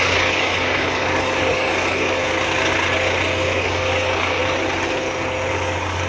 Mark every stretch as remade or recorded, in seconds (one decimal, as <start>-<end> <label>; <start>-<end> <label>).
0.0-2.2 remade; 2.2-3.6 recorded; 3.6-4.4 remade; 4.4-5.5 recorded; 5.5-6.1 remade